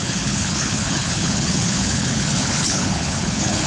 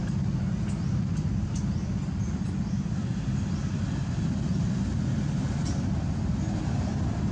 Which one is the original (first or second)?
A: second